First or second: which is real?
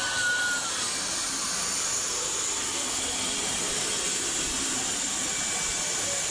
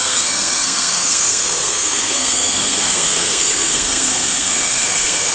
first